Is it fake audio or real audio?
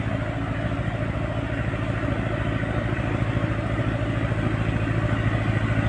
real